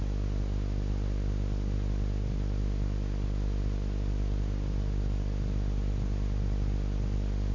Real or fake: real